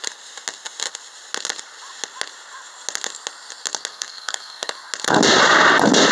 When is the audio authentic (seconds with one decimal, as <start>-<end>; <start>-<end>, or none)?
0.0-3.9; 4.7-6.1